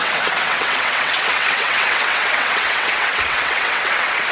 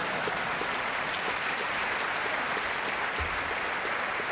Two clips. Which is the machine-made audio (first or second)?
first